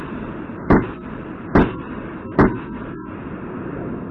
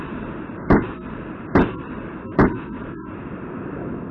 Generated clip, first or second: second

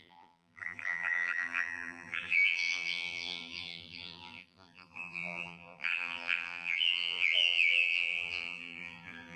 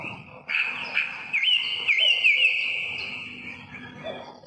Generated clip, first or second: first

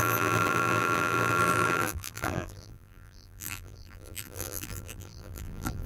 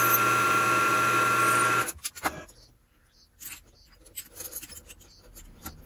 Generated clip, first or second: first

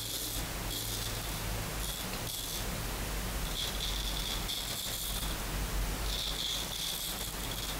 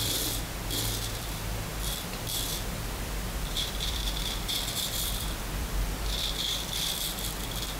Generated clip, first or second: second